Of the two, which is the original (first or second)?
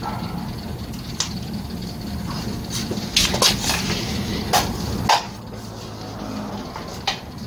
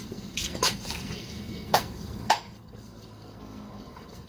first